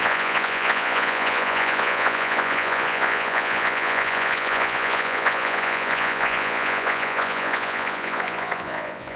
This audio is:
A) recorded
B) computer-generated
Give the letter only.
B